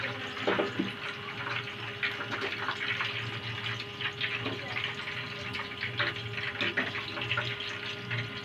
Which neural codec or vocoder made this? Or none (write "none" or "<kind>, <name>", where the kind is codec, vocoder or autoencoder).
none